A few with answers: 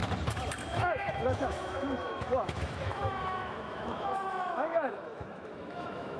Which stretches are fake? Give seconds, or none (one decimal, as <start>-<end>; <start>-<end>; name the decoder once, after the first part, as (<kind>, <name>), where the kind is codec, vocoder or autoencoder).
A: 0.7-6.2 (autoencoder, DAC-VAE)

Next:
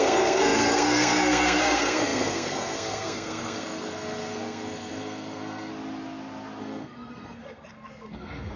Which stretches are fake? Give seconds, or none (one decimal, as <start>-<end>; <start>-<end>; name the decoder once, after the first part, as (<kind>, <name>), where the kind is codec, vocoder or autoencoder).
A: 0.0-5.7 (codec, SNAC); 6.6-8.6

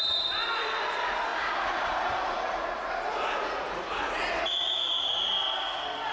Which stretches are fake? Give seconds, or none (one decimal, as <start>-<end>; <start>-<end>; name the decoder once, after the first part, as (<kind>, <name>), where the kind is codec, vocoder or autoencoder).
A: 1.3-4.9 (vocoder, Vocos)

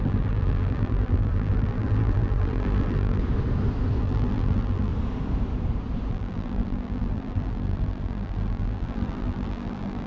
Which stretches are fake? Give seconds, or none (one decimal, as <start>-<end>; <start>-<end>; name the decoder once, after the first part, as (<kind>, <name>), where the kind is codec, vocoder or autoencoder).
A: 0.0-3.2 (vocoder, BigVGAN v2); 4.0-4.9; 6.1-10.1

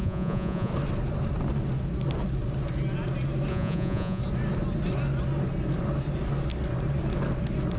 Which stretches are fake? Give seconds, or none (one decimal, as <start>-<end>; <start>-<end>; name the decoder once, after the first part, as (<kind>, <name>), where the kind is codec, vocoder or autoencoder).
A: 0.0-0.7 (vocoder, Vocos); 3.5-4.2